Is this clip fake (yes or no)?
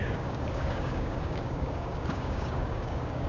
yes